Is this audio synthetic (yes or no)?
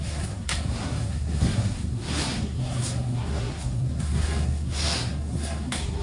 yes